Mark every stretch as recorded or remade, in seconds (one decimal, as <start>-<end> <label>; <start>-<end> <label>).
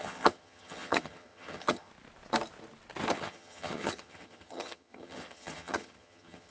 0.0-1.9 remade; 1.9-3.1 recorded; 3.1-6.5 remade